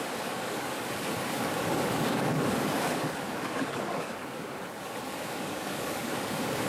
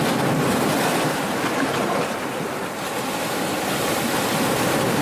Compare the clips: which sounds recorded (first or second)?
second